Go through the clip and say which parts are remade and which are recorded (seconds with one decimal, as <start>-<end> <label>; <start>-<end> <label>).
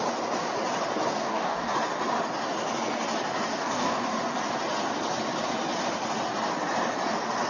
0.0-1.2 recorded; 1.2-1.7 remade; 1.7-3.5 recorded; 3.5-4.1 remade; 4.1-7.5 recorded